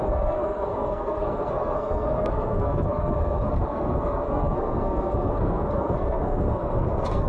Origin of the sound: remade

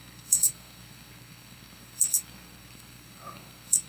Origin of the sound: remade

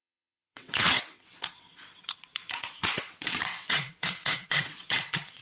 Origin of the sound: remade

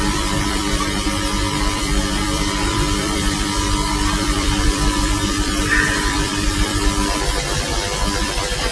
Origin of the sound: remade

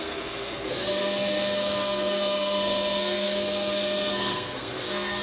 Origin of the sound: remade